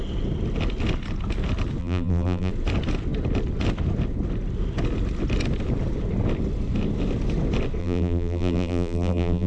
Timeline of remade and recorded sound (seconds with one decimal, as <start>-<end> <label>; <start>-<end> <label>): 0.0-1.8 recorded; 1.8-2.5 remade; 2.5-7.8 recorded; 7.8-9.5 remade